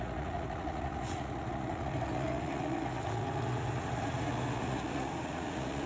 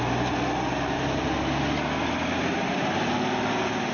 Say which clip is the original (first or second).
second